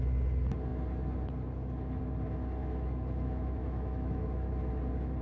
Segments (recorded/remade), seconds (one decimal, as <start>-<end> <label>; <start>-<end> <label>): 0.0-2.6 recorded; 2.6-4.7 remade; 4.7-5.2 recorded